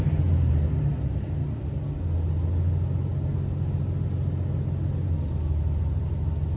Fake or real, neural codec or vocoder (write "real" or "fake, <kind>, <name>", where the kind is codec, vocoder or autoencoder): real